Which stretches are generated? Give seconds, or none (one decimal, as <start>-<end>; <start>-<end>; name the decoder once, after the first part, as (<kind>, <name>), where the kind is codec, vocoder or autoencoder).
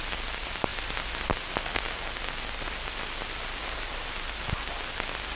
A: none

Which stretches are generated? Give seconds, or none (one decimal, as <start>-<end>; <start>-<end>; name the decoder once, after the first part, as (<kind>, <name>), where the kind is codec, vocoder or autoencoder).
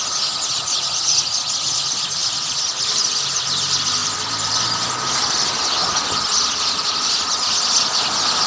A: 2.2-3.0 (vocoder, BigVGAN v2); 4.0-7.6